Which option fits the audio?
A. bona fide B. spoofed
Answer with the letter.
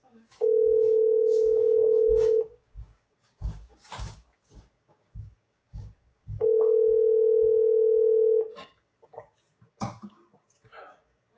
B